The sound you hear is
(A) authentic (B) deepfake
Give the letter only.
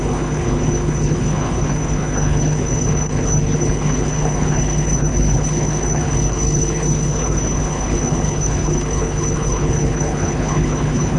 B